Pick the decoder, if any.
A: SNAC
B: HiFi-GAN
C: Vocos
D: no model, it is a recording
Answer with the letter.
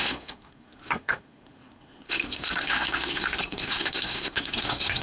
A